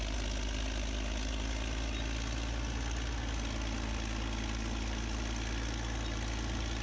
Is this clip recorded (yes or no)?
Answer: yes